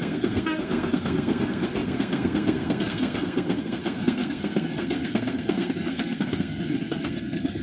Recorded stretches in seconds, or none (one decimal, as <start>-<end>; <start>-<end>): none

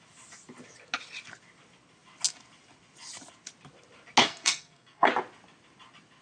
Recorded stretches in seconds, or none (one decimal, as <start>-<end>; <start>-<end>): 0.0-4.2; 5.1-6.2

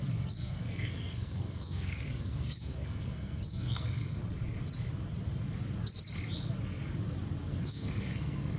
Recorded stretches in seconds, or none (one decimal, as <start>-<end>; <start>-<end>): 4.2-7.5

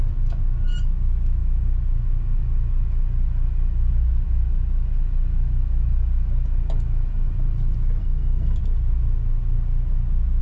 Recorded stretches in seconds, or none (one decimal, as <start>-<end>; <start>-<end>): 0.0-8.0; 8.6-10.4

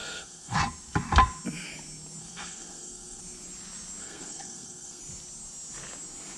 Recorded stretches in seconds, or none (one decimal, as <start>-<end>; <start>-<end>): 0.6-2.2; 3.2-4.0; 5.0-6.4

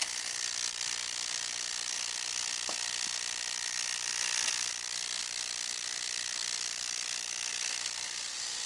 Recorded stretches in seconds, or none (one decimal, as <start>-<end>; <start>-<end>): 0.0-8.7

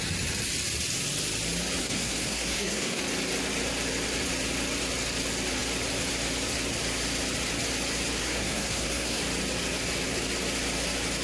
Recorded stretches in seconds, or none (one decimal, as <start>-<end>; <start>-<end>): 0.0-1.8; 3.0-8.2; 9.2-11.2